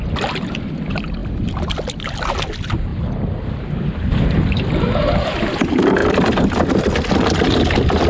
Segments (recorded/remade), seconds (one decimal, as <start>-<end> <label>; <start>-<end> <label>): 0.0-8.1 recorded